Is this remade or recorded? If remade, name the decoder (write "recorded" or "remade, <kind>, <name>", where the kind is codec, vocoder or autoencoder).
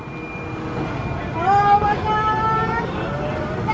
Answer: recorded